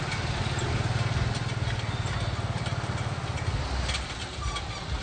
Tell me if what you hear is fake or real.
real